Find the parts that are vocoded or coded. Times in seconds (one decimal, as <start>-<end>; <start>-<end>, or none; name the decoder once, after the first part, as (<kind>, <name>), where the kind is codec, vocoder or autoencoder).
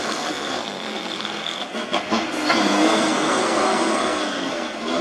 0.0-5.0 (codec, SNAC)